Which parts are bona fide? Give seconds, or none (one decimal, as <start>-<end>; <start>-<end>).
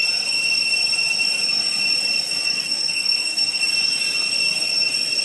0.0-2.6; 3.6-5.2